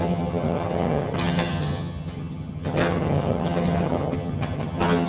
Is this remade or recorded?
remade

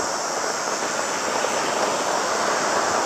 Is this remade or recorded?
recorded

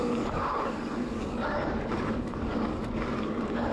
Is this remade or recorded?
remade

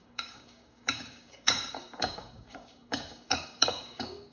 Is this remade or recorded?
remade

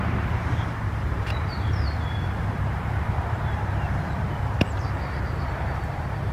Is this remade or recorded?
remade